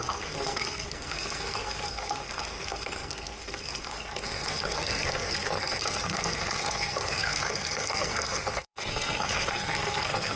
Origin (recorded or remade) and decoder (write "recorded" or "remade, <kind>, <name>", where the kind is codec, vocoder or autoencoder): remade, codec, SNAC